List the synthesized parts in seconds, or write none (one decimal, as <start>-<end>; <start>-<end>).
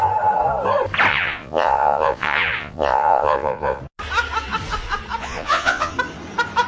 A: 1.1-3.8; 5.2-5.9